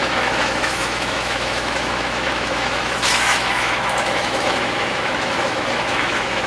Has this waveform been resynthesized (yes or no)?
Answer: yes